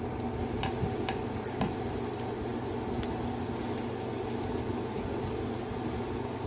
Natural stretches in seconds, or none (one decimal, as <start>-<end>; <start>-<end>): 0.0-6.5